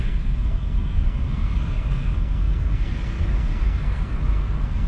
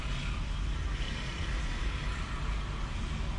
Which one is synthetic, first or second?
first